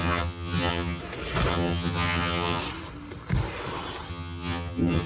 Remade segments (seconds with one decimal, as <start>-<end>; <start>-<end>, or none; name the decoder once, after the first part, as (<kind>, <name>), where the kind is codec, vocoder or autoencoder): 0.0-1.0 (vocoder, HiFi-GAN); 1.5-2.6; 4.1-5.1